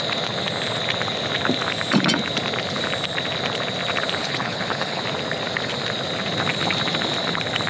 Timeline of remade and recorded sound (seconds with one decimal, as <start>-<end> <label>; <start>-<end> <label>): 0.0-4.2 recorded; 4.2-5.0 remade; 5.0-7.7 recorded